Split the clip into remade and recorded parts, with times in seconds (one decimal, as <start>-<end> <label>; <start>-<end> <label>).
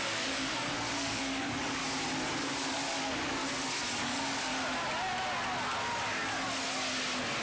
0.0-1.8 remade; 1.8-2.4 recorded; 2.4-3.4 remade; 3.4-4.0 recorded; 4.0-4.5 remade; 4.5-7.4 recorded